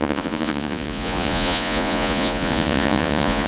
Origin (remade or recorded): remade